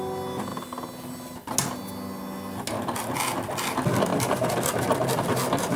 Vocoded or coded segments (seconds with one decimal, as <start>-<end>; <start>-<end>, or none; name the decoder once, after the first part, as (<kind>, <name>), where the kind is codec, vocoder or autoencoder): 4.1-4.6 (vocoder, BigVGAN v2)